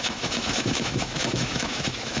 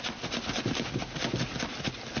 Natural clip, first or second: second